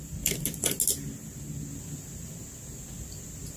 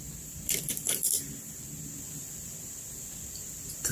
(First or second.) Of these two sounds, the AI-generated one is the second